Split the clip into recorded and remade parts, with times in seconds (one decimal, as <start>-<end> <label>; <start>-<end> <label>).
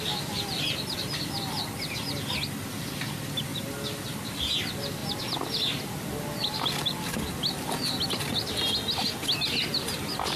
0.0-10.4 recorded